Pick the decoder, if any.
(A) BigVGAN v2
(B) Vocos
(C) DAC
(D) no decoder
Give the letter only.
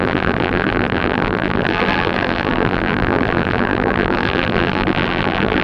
A